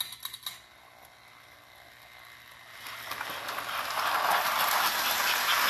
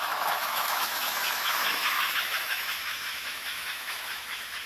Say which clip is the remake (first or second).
second